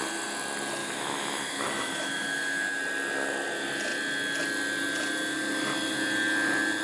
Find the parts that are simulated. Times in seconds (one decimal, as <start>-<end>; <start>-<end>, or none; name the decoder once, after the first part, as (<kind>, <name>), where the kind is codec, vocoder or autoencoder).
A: 0.8-2.8 (autoencoder, DAC-VAE)